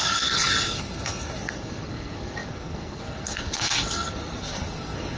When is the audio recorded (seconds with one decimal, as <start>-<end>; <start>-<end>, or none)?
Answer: none